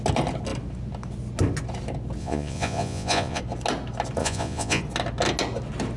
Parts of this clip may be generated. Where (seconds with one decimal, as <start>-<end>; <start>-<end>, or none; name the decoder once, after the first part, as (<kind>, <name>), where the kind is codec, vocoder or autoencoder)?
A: 2.2-3.4 (vocoder, Vocos); 4.2-4.8